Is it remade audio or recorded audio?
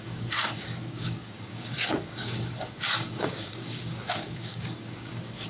remade